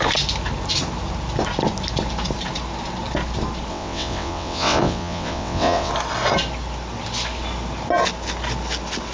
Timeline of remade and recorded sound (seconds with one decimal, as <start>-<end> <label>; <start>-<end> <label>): 0.0-3.7 recorded; 3.7-5.9 remade; 5.9-9.1 recorded